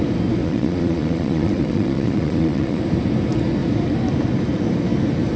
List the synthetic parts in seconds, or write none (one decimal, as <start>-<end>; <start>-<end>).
0.4-2.8